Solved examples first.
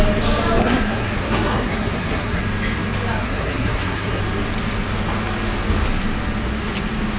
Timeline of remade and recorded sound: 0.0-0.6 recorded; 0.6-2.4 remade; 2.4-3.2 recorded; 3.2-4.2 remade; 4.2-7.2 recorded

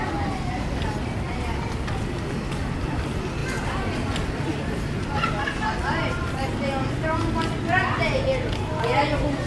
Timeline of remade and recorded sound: 0.0-9.5 recorded

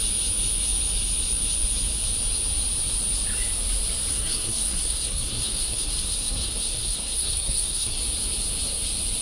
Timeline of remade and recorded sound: 0.0-4.1 recorded; 4.1-8.0 remade; 8.0-9.2 recorded